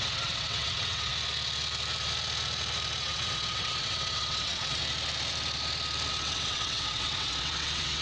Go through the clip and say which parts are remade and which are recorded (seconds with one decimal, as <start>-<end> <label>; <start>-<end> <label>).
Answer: 0.0-1.1 remade; 1.1-3.0 recorded; 3.0-4.8 remade; 4.8-6.1 recorded; 6.1-8.0 remade